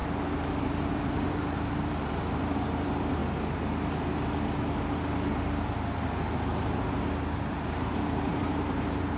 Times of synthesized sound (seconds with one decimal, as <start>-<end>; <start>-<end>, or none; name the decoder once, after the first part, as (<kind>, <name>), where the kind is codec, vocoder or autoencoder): 0.9-3.2 (vocoder, BigVGAN v2); 7.5-9.2